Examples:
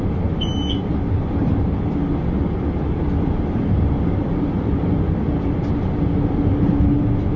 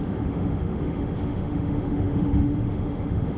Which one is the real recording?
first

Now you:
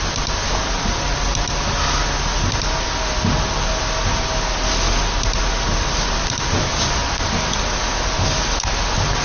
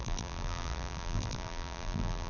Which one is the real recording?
first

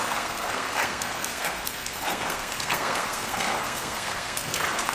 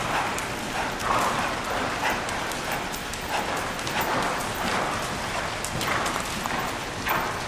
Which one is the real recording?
second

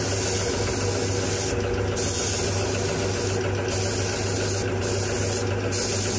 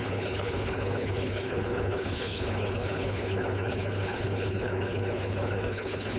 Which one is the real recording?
first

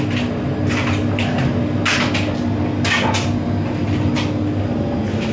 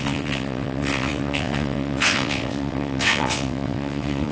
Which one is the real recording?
first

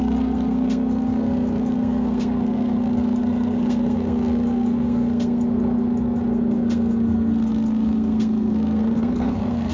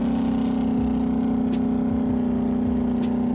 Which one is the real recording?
second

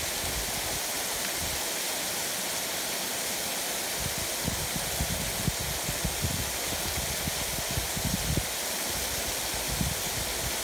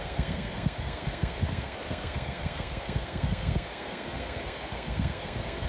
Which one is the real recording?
first